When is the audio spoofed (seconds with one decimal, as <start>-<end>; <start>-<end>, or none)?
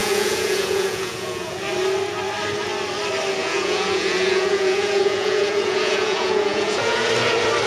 0.0-1.6; 3.4-7.1